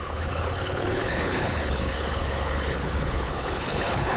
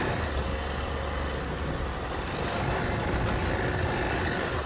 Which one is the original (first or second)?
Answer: second